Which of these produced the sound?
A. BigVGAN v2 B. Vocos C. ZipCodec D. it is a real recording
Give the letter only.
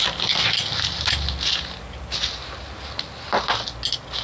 D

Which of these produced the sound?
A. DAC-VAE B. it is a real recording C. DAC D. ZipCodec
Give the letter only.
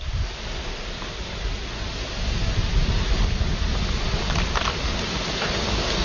B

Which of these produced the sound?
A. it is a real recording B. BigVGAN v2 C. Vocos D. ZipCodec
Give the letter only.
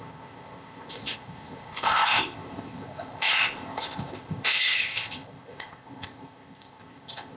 D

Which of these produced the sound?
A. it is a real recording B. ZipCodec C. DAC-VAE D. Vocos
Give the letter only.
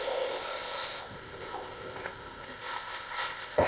B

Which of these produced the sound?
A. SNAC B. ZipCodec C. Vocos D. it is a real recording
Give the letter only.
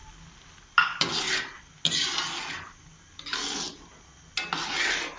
D